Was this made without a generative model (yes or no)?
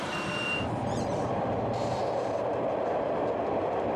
no